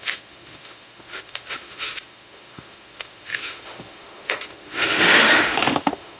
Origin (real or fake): fake